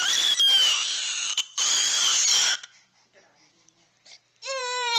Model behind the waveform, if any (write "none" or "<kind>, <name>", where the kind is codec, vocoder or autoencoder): vocoder, BigVGAN v2